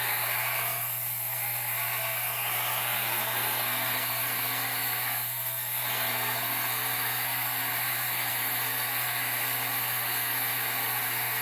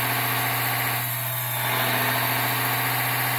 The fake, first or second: first